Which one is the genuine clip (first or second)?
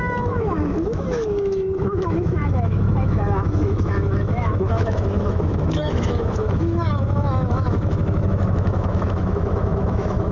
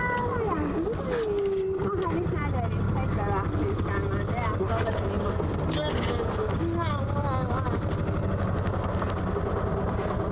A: second